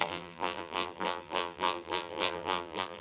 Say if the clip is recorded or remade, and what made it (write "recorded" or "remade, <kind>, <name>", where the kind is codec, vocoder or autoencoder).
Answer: remade, vocoder, BigVGAN v2